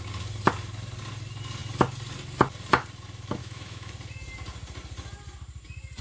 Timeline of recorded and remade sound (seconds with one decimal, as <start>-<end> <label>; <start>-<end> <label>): 0.0-3.4 recorded; 3.4-3.9 remade; 3.9-6.0 recorded